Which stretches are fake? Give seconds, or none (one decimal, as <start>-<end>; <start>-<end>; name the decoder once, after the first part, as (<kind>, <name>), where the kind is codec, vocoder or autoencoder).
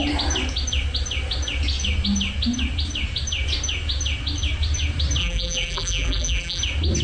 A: 5.2-6.6 (vocoder, BigVGAN v2)